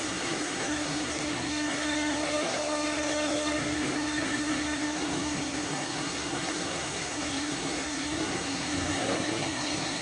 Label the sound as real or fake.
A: fake